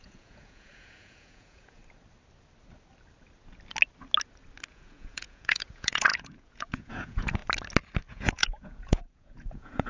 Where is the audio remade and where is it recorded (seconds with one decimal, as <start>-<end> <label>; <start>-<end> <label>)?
0.0-1.8 remade; 1.8-4.7 recorded; 4.7-7.4 remade; 7.4-8.1 recorded; 8.1-9.9 remade

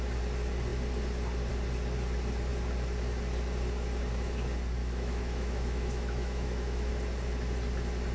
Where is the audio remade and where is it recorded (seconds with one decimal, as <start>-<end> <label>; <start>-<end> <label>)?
0.0-4.8 recorded; 4.8-6.9 remade; 6.9-8.1 recorded

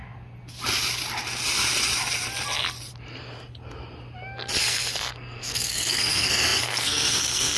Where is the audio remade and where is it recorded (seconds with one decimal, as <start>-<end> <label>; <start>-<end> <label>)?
0.0-4.6 recorded; 4.6-7.6 remade

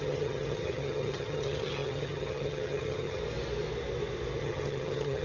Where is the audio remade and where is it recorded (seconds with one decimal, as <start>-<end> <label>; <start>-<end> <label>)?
0.0-3.2 remade; 3.2-4.4 recorded; 4.4-5.2 remade

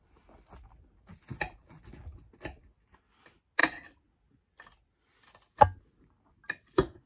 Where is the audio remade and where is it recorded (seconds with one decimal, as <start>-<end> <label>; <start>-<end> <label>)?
0.0-7.1 recorded

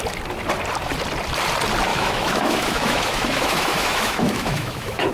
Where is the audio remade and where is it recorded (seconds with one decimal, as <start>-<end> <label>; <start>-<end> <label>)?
0.0-1.9 recorded; 1.9-5.1 remade